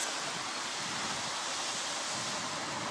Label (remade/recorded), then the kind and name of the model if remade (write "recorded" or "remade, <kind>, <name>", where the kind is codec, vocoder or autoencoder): recorded